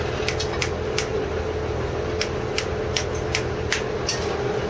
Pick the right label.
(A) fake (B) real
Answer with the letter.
B